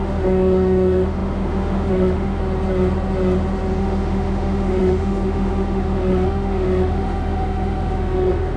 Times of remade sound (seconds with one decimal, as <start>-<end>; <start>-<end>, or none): 0.0-2.4; 3.8-8.6